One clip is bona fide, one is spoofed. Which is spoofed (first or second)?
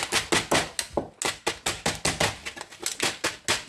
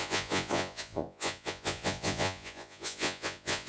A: second